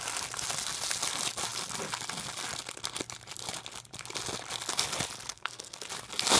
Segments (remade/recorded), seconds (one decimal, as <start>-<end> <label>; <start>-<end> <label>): 0.0-5.3 recorded; 5.3-5.9 remade; 5.9-6.4 recorded